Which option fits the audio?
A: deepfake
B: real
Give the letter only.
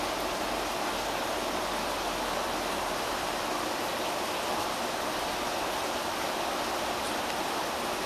B